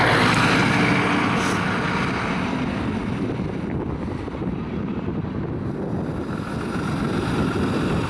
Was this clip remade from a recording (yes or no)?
no